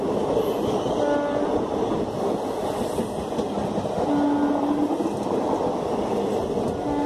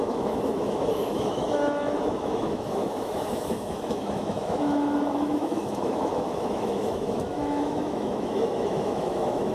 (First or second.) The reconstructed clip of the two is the second